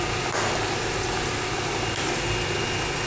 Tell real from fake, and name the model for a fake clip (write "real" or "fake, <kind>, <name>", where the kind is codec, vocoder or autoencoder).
real